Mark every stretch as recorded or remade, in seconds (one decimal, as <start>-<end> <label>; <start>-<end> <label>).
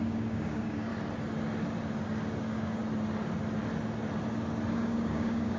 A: 0.0-0.9 remade; 0.9-2.4 recorded; 2.4-2.8 remade; 2.8-4.7 recorded; 4.7-5.6 remade